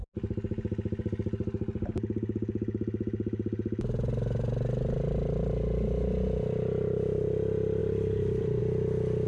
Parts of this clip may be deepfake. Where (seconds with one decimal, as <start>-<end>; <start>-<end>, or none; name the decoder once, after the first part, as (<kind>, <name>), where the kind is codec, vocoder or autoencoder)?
7.8-8.6 (vocoder, BigVGAN v2)